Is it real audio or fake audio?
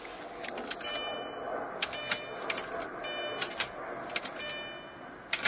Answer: real